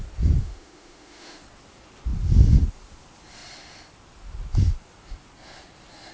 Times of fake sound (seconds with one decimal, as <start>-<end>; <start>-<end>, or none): 0.4-1.4